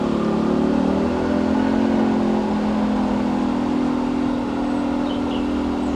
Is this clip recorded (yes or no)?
yes